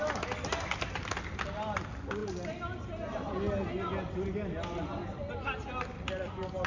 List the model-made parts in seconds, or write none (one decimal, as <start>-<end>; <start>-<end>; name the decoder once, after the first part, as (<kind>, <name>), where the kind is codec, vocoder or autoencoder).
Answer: none